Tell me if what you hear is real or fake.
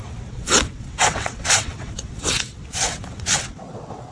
fake